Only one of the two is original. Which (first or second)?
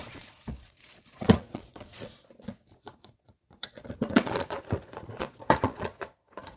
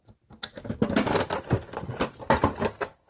second